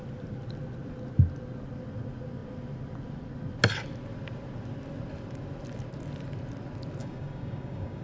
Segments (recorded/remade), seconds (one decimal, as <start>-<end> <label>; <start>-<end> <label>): 0.0-7.0 recorded; 7.0-8.0 remade